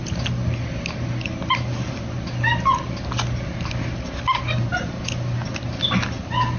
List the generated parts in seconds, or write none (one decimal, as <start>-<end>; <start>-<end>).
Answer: none